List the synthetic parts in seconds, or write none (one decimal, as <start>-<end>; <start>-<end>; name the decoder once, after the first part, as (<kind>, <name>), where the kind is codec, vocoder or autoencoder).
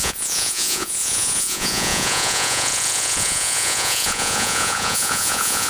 0.0-5.7 (vocoder, Vocos)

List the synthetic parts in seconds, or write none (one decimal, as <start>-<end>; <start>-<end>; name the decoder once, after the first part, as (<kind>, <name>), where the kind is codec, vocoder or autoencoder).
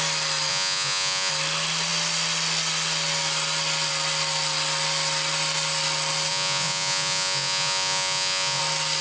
0.5-1.3 (vocoder, Vocos); 6.3-8.6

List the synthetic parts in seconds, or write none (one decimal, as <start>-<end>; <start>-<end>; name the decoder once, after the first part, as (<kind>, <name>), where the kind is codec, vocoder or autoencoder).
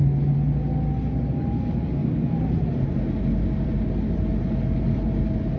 none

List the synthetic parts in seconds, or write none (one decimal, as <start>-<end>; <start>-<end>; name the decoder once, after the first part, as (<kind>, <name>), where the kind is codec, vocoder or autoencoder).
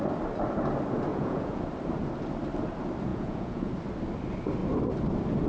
1.1-1.6 (vocoder, Vocos); 3.1-3.7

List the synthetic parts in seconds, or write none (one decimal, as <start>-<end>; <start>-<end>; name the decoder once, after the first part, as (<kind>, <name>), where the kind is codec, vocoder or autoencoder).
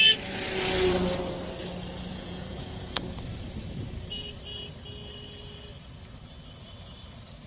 2.1-3.0 (vocoder, Vocos)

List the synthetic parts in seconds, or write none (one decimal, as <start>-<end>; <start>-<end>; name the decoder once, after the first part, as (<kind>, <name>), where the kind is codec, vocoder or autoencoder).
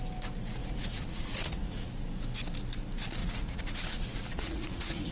0.6-1.9 (vocoder, Vocos); 3.2-5.1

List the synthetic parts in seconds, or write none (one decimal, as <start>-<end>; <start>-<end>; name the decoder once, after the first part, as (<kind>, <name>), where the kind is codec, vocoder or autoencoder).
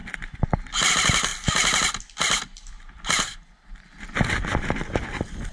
none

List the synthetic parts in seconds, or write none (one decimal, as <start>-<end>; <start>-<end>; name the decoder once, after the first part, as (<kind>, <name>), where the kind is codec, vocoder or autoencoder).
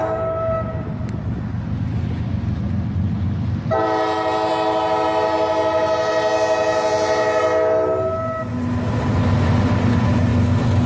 6.6-7.4 (vocoder, Vocos)